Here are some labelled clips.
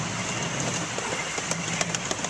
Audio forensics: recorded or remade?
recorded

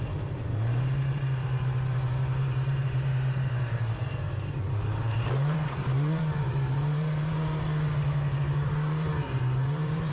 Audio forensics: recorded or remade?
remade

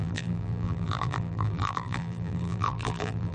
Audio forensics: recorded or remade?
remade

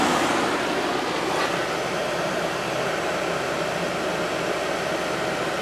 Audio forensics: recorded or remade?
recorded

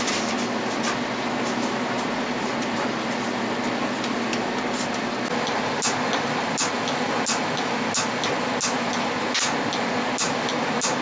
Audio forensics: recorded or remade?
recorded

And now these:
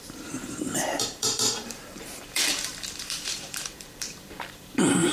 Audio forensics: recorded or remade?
remade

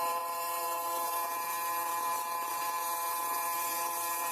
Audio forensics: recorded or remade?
remade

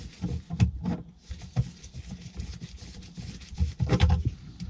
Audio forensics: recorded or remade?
recorded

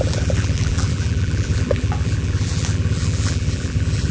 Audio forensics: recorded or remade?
remade